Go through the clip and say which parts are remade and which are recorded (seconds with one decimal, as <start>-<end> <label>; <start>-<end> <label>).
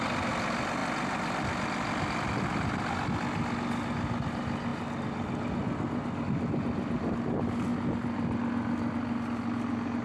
0.0-10.0 recorded